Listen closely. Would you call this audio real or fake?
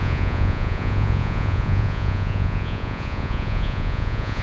fake